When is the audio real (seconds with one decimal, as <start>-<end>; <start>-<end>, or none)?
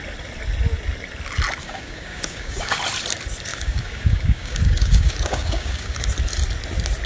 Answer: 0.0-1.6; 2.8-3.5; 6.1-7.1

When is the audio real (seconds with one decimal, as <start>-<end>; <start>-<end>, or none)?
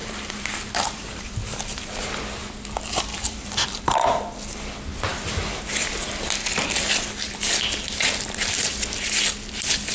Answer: 2.0-3.1; 4.2-9.9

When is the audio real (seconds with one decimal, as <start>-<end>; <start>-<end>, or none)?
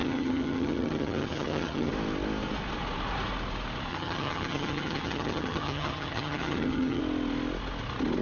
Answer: 1.9-3.9; 7.0-8.2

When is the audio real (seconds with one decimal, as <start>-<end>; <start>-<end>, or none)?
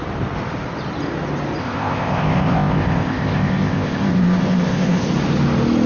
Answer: 0.0-1.6; 5.1-5.9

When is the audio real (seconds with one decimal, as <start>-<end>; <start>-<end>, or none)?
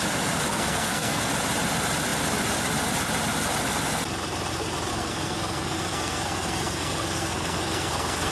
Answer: 0.0-0.5; 1.3-4.9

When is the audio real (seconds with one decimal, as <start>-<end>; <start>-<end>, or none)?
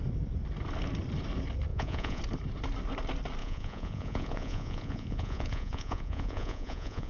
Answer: 0.0-1.7; 2.2-3.4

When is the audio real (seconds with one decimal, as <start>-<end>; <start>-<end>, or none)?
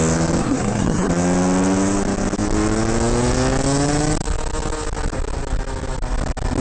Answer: 0.0-0.4; 1.1-6.6